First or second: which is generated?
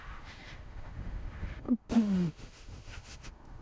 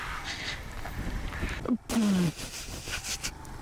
first